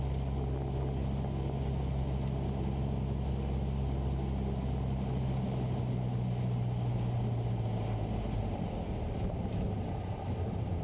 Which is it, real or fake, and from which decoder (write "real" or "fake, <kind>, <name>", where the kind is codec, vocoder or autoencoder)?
real